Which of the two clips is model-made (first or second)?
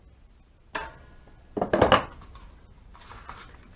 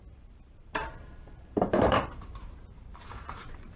second